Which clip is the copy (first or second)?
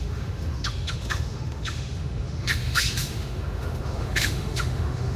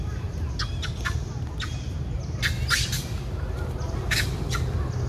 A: first